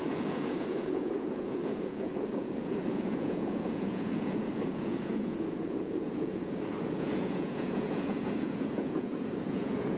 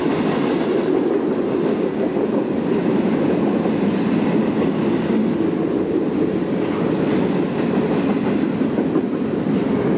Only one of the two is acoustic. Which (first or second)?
second